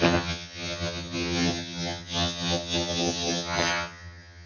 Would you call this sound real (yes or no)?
no